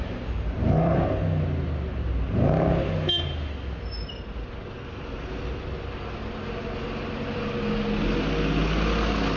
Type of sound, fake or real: real